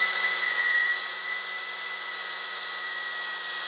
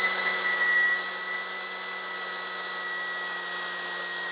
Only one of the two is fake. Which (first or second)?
first